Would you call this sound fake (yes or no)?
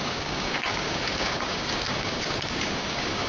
yes